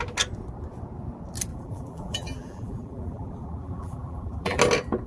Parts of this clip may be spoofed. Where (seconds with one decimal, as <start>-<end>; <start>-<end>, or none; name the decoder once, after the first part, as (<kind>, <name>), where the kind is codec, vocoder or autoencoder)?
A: 1.5-4.6 (vocoder, BigVGAN v2)